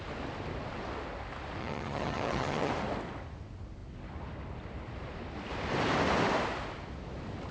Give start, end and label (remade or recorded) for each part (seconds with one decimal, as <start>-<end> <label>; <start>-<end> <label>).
0.0-1.6 recorded; 1.6-2.7 remade; 2.7-7.5 recorded